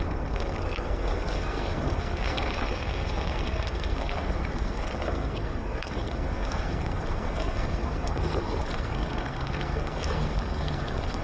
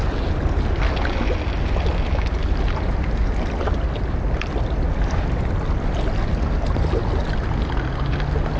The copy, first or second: first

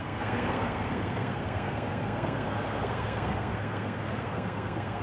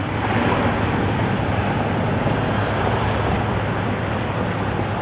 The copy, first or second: first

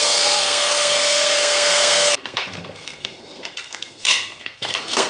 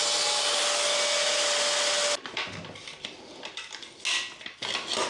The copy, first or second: first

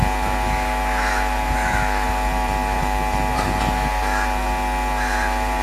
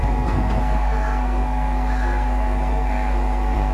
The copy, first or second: second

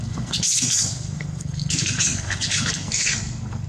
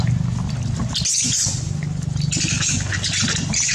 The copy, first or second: first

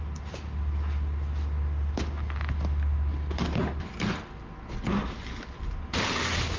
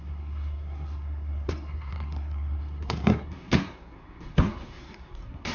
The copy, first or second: second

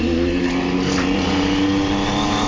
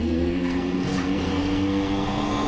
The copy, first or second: second